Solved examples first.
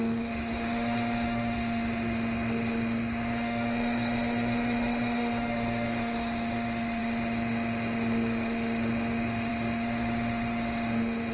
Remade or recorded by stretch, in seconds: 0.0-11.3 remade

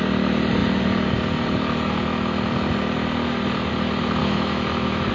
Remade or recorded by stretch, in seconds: 0.0-4.2 recorded; 4.2-5.1 remade

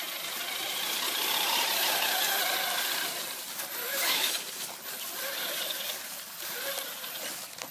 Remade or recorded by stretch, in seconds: 0.0-3.8 recorded; 3.8-4.4 remade; 4.4-7.7 recorded

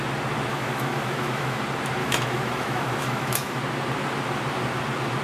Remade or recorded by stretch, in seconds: 0.0-0.5 recorded; 0.5-1.6 remade; 1.6-2.0 recorded; 2.0-3.6 remade; 3.6-5.2 recorded

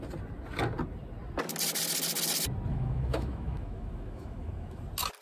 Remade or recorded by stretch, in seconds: 0.0-2.7 recorded; 2.7-4.8 remade; 4.8-5.2 recorded

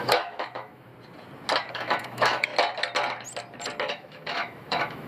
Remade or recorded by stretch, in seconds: 0.0-0.9 remade; 0.9-1.7 recorded; 1.7-2.5 remade; 2.5-3.9 recorded; 3.9-5.1 remade

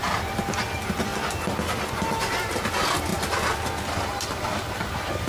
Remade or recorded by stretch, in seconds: 0.0-5.3 recorded

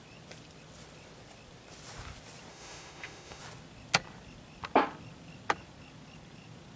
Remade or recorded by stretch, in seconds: 0.0-2.5 recorded; 2.5-3.4 remade; 3.4-6.8 recorded